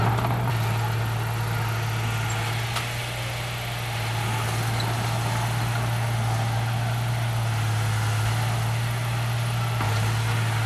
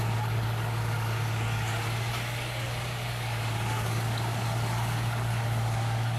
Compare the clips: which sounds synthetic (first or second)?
second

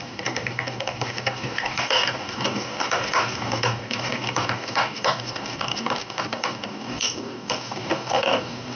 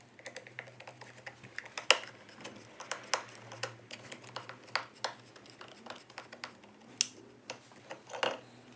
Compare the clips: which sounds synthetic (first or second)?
first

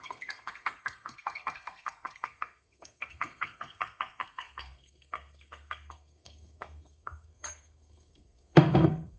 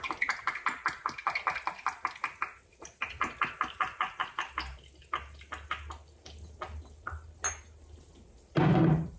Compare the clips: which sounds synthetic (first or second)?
first